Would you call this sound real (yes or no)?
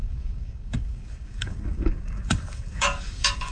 no